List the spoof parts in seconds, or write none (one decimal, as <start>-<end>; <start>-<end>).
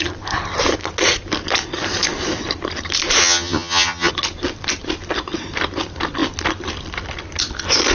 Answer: 3.2-4.1